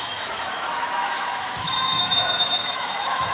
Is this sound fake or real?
fake